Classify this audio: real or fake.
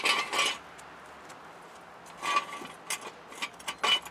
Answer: real